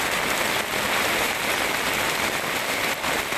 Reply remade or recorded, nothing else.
recorded